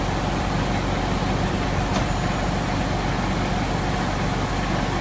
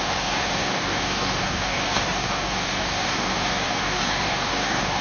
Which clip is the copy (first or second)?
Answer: second